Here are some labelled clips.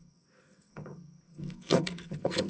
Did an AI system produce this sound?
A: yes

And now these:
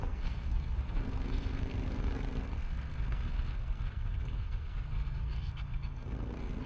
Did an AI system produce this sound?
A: yes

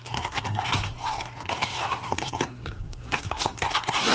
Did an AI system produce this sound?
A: yes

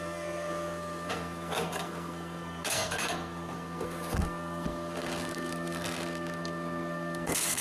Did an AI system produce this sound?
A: yes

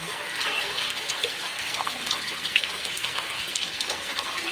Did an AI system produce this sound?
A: yes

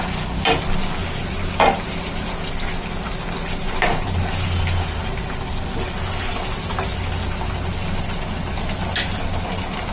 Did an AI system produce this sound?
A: no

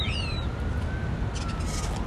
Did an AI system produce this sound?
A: no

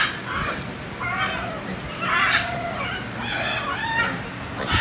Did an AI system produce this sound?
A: no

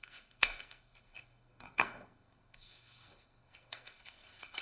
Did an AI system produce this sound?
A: yes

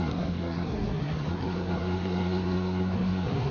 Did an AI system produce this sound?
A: yes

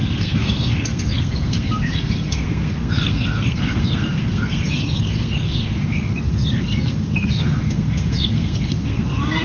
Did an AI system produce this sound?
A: yes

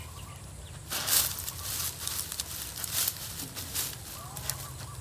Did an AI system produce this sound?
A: no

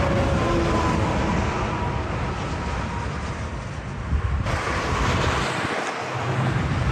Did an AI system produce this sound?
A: no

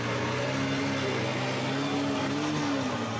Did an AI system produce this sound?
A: no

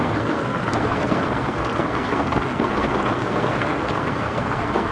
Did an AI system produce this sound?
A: yes